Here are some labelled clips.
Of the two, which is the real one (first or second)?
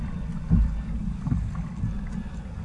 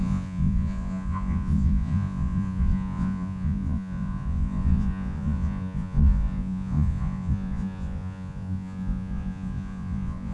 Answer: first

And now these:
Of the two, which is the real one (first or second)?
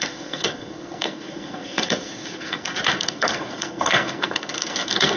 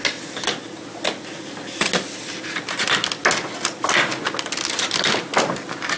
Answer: second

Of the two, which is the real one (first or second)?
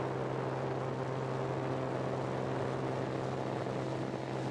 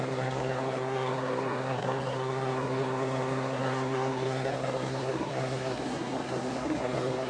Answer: first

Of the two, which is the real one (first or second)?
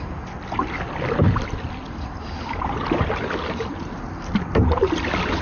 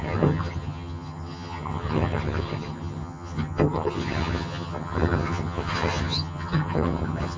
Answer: first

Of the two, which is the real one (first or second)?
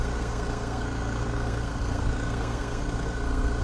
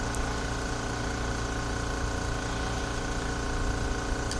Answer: second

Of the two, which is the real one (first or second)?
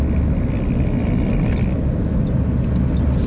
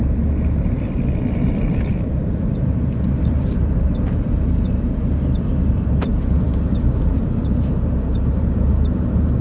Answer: first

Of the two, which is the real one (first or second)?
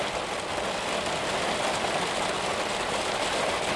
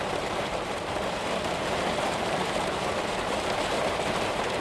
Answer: first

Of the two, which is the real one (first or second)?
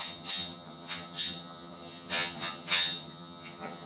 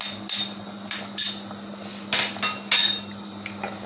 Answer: second